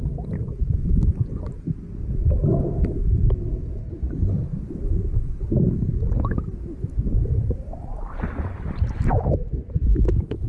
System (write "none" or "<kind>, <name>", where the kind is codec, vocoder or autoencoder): none